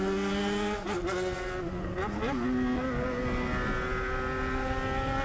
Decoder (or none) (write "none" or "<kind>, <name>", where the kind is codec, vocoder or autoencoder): none